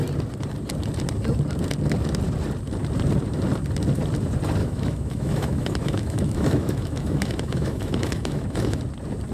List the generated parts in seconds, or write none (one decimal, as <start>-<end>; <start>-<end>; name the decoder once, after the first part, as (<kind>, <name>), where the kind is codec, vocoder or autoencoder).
4.6-8.8 (autoencoder, DAC-VAE)

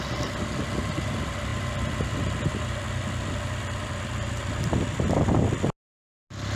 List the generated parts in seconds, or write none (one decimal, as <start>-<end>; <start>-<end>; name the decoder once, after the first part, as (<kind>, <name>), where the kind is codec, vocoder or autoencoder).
none

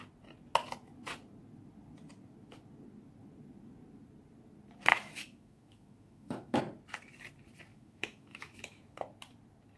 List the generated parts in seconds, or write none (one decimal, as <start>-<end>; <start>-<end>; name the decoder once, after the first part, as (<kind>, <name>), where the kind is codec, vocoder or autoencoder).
4.9-6.6 (autoencoder, DAC-VAE); 7.7-9.0